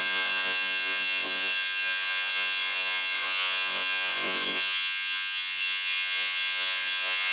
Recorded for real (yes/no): no